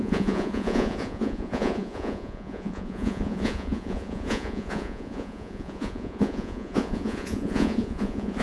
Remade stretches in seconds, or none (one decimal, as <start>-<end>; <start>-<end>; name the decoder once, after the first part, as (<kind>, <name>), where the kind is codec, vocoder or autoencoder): 0.0-8.4 (vocoder, Vocos)